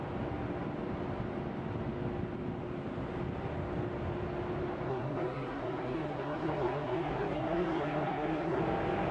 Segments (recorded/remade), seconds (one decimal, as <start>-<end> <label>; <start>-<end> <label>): 0.0-4.9 recorded; 4.9-8.6 remade; 8.6-9.1 recorded